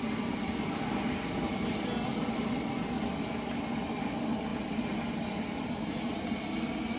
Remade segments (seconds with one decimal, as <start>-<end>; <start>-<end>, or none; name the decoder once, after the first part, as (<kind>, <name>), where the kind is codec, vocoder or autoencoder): none